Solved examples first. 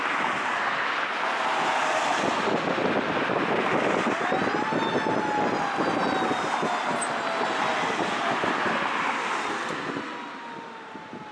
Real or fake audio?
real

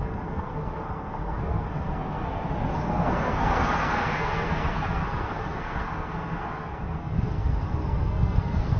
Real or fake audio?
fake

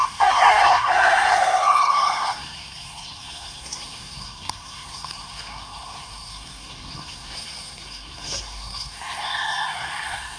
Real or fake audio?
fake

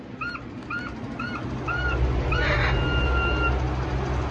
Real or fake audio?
real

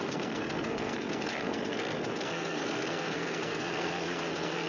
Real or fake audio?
fake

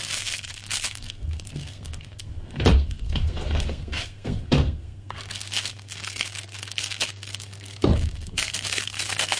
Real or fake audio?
fake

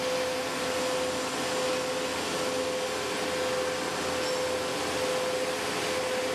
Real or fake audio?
real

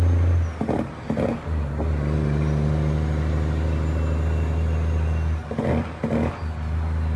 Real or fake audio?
real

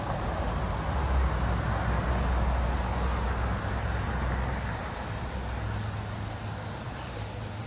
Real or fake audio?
real